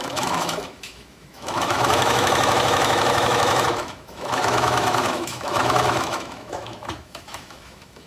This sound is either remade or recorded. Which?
remade